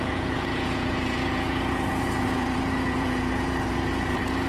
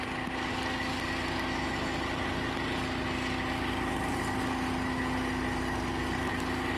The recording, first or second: second